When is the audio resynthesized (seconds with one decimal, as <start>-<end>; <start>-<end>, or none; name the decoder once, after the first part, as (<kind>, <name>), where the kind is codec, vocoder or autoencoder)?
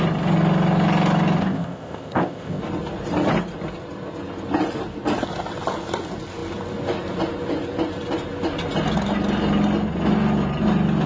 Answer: 1.4-2.6 (codec, ZipCodec)